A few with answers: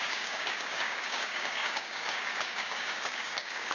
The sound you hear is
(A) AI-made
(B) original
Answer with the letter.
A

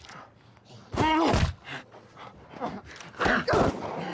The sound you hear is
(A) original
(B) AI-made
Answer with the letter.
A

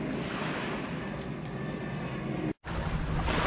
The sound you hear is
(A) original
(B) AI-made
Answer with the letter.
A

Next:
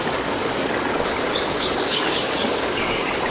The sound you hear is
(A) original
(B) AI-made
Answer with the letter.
B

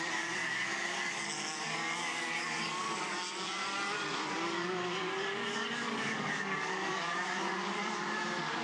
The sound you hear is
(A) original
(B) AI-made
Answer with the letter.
B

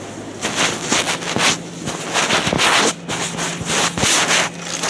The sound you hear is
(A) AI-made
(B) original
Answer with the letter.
B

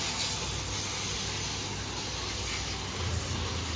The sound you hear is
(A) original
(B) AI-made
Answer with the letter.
A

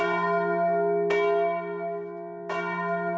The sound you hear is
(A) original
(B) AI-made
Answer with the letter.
A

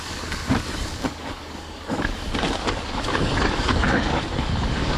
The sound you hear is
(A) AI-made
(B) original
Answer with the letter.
A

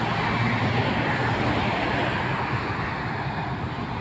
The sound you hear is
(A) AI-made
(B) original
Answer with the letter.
B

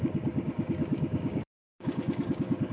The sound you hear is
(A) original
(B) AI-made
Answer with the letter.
B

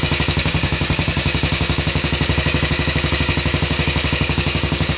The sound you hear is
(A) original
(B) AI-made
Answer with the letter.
B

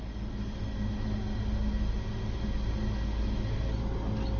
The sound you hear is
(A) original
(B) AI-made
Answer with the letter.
A